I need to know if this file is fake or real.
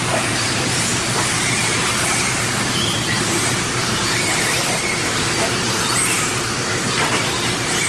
fake